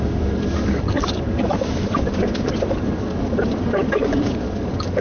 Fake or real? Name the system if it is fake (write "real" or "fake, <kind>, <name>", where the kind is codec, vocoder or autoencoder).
fake, codec, DAC